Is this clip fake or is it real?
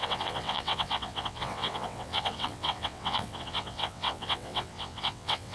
fake